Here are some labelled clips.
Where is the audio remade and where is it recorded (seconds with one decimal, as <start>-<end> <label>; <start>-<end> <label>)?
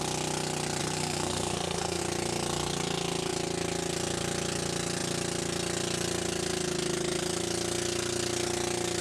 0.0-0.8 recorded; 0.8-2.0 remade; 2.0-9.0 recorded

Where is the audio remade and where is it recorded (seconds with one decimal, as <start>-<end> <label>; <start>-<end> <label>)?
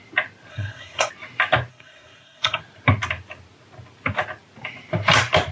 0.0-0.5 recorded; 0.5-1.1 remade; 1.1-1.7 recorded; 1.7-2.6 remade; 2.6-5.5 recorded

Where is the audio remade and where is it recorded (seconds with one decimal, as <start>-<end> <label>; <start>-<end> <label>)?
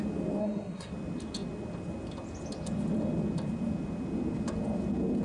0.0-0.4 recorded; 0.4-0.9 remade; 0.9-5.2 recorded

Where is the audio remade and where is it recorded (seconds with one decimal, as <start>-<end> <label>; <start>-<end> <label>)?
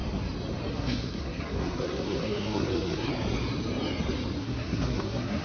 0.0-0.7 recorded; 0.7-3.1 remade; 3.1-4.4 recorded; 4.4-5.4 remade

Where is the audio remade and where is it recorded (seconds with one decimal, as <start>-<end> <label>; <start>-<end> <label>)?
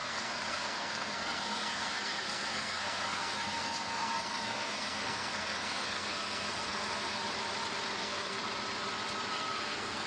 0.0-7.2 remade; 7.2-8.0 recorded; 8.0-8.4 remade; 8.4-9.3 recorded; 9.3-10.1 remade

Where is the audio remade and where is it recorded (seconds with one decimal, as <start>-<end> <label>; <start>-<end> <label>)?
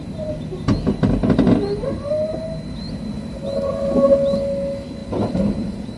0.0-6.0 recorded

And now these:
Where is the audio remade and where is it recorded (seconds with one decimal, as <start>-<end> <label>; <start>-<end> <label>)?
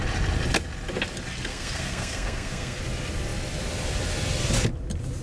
0.0-1.5 recorded; 1.5-2.8 remade; 2.8-5.2 recorded